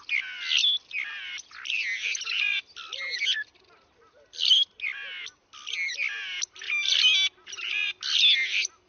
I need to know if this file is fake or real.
real